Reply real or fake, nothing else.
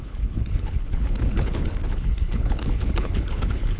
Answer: fake